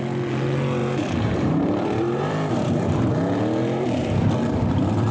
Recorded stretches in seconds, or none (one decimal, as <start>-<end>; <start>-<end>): 0.0-0.8; 3.1-3.6; 4.3-5.1